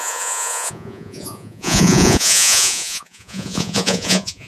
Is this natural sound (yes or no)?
no